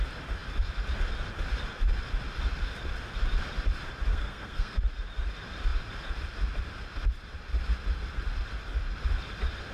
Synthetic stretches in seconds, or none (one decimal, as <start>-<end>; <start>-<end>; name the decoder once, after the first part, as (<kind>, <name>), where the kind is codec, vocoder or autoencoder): 4.1-4.8 (codec, SNAC)